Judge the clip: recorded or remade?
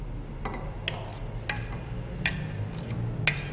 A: recorded